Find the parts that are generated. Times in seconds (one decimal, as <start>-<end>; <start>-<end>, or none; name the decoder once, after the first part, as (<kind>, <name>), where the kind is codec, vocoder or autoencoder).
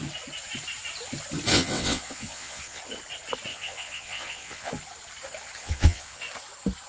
1.5-2.8 (vocoder, WaveNeXt); 3.5-4.7; 5.6-6.3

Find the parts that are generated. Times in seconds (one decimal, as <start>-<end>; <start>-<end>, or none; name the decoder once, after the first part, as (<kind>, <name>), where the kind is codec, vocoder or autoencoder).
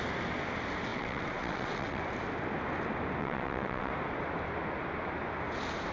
0.9-2.0 (vocoder, WaveNeXt); 3.2-3.9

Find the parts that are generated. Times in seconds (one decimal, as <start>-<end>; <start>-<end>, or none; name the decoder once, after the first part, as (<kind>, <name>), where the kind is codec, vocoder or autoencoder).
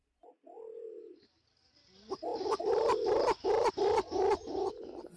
none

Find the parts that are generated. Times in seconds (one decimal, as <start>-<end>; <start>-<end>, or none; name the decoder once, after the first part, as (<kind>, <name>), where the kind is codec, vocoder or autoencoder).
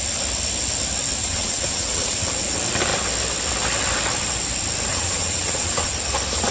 1.2-2.2 (vocoder, WaveNeXt); 4.9-5.9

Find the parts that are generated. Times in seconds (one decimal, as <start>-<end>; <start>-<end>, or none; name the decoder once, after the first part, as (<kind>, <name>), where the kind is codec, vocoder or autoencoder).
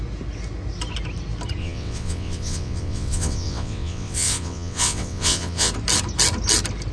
1.6-5.7 (vocoder, WaveNeXt)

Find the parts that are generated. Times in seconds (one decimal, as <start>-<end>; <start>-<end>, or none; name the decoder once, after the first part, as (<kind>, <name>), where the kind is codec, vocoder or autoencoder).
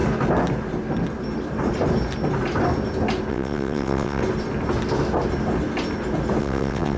3.3-4.2 (vocoder, WaveNeXt); 6.4-7.0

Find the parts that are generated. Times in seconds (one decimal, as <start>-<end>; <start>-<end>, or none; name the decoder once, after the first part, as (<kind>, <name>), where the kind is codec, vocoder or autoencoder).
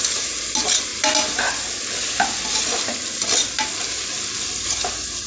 none